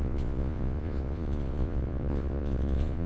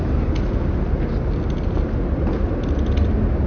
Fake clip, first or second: first